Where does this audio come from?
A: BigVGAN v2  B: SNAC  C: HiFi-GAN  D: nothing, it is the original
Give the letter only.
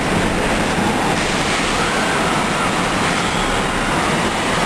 D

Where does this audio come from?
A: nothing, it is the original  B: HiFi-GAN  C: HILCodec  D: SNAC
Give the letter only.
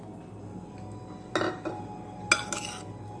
A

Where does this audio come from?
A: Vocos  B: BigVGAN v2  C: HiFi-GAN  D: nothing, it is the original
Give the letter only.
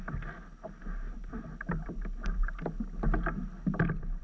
D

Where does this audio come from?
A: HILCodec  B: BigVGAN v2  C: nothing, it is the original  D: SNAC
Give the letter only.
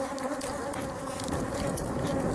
C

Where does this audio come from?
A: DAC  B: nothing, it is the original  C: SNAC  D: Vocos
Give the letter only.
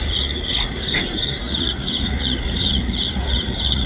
D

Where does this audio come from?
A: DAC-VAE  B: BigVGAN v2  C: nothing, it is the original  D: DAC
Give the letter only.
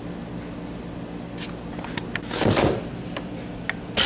C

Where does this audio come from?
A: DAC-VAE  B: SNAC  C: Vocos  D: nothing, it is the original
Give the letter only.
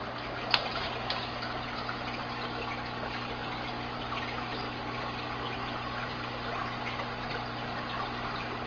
D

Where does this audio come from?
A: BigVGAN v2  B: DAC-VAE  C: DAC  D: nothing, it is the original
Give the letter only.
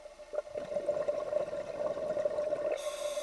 D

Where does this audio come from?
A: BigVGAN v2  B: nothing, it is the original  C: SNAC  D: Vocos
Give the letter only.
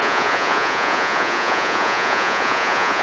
D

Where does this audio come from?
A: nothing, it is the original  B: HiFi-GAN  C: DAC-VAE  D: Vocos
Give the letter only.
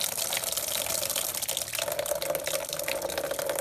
A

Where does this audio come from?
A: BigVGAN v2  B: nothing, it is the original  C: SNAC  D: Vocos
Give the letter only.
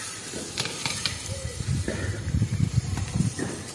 A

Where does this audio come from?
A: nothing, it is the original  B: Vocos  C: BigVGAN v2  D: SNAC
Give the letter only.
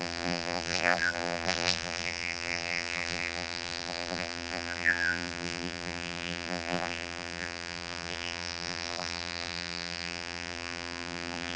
C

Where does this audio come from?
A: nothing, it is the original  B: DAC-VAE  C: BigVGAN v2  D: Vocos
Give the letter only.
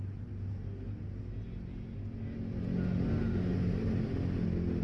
A